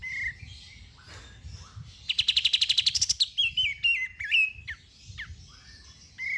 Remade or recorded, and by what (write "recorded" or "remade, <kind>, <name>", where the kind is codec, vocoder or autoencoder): recorded